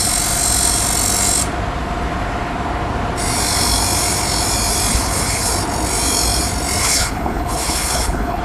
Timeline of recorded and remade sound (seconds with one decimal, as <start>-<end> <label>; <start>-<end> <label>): 0.0-4.9 recorded; 4.9-5.5 remade; 5.5-6.8 recorded; 6.8-8.4 remade